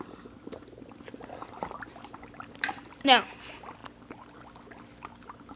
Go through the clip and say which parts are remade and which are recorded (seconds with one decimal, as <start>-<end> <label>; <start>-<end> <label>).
0.0-5.6 recorded